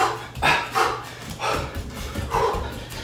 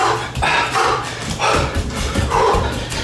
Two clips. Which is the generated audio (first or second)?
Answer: second